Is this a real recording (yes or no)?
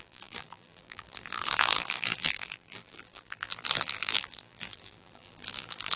no